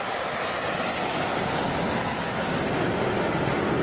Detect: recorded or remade recorded